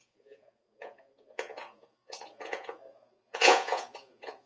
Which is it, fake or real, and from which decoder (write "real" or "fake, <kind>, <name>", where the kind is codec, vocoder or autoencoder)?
fake, vocoder, Vocos